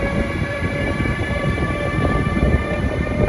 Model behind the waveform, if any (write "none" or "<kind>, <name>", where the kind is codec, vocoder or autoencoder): vocoder, BigVGAN v2